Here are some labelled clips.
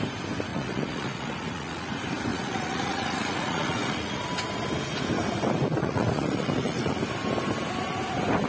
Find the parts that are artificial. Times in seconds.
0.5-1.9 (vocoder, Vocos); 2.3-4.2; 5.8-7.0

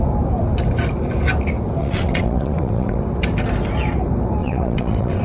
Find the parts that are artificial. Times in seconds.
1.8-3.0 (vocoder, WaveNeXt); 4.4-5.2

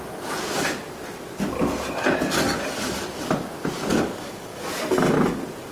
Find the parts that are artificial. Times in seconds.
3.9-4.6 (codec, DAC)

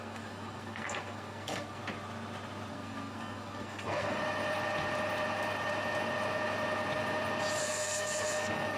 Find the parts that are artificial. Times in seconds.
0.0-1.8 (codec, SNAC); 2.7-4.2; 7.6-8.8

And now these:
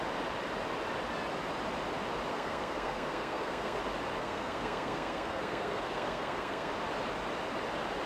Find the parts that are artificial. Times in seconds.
2.3-3.8 (codec, SNAC); 4.2-6.7

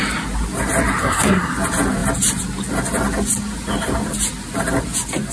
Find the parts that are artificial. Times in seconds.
1.0-1.5 (codec, SNAC)